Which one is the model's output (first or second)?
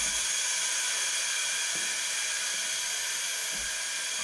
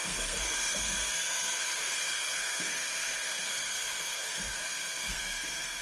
second